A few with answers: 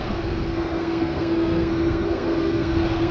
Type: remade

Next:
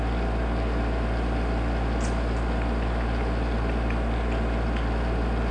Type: recorded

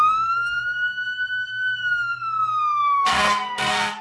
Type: remade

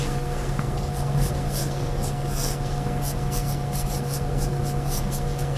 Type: remade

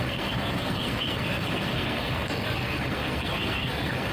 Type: remade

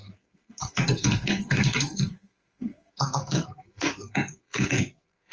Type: remade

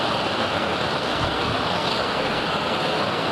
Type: remade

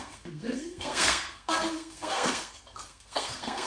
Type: remade